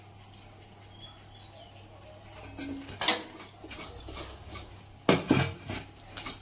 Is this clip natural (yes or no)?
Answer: yes